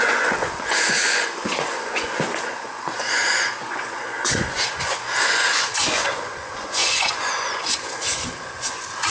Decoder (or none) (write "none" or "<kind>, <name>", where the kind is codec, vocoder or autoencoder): vocoder, Vocos